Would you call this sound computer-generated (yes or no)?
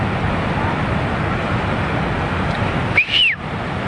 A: no